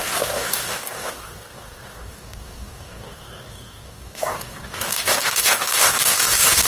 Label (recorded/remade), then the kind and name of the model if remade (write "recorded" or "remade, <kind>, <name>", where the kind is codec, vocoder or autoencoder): remade, codec, DAC